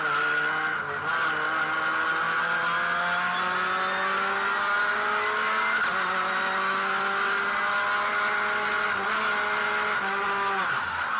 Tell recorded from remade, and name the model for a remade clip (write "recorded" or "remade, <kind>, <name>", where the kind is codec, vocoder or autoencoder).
recorded